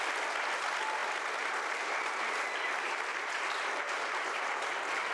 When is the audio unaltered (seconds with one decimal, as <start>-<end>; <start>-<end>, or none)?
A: 0.0-3.1